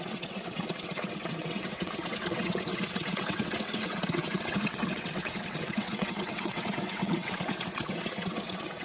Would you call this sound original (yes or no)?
no